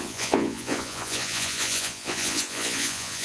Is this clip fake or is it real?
fake